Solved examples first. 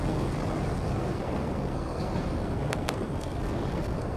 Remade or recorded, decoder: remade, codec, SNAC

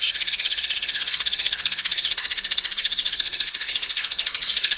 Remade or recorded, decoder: remade, codec, SNAC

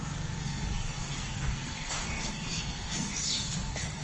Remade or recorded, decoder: remade, codec, SNAC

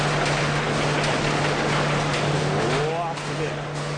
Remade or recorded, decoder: recorded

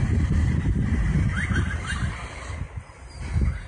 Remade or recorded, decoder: recorded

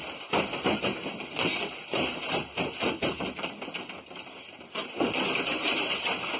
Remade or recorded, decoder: recorded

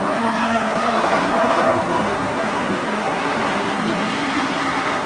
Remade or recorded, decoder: remade, codec, SNAC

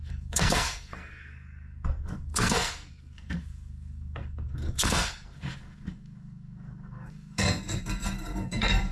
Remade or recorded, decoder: remade, codec, SNAC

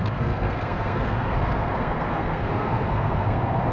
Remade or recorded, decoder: remade, codec, SNAC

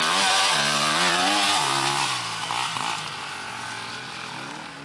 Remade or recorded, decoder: recorded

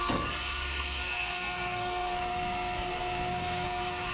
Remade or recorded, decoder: remade, codec, SNAC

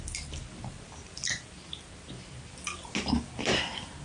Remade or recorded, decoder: recorded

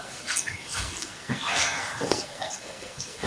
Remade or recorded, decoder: remade, codec, SNAC